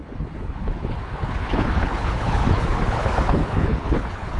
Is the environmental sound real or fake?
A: fake